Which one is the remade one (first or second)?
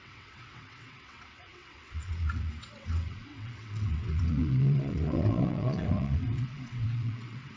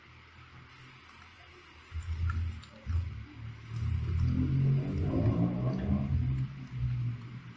first